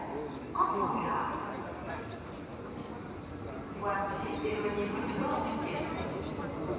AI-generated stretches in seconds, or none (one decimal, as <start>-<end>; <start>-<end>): none